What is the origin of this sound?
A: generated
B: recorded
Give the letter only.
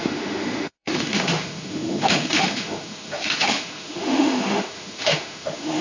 A